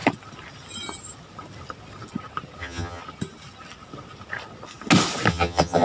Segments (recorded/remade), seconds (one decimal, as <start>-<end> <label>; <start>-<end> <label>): 0.0-2.6 recorded; 2.6-3.0 remade; 3.0-5.3 recorded; 5.3-5.8 remade